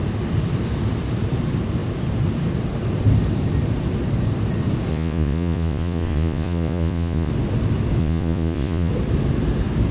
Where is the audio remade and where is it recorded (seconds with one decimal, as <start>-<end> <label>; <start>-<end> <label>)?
0.0-4.9 recorded; 4.9-7.3 remade; 7.3-8.0 recorded; 8.0-8.9 remade; 8.9-9.9 recorded